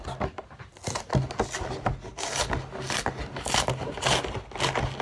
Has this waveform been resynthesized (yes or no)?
no